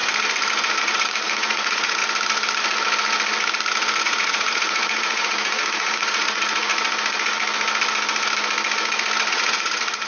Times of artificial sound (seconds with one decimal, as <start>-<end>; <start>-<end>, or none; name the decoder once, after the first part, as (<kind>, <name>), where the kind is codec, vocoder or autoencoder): 0.8-2.0 (vocoder, Vocos); 4.0-6.7; 9.3-10.1